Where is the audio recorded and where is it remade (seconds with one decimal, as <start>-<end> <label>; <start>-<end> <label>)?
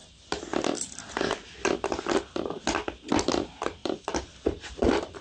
0.0-3.8 recorded; 3.8-5.2 remade